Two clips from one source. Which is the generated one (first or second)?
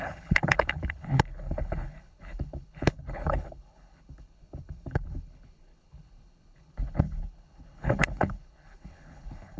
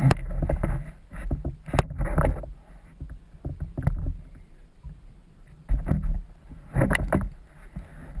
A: first